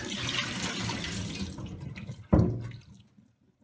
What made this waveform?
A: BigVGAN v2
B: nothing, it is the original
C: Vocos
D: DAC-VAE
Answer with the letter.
B